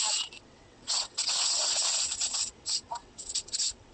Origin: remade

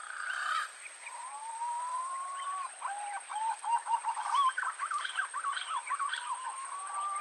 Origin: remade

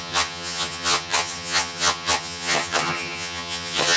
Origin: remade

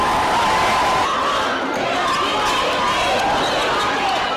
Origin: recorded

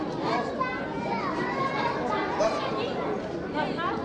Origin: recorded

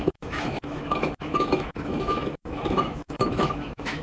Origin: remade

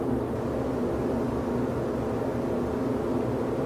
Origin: recorded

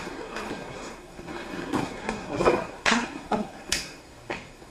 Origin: remade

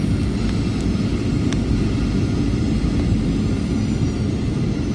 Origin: recorded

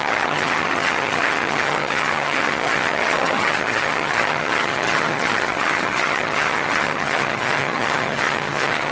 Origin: remade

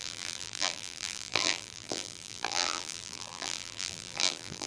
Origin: remade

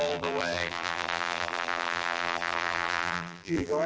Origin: remade